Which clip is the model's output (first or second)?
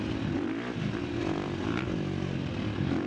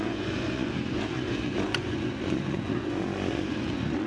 second